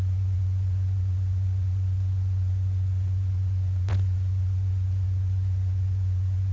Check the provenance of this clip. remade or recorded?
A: remade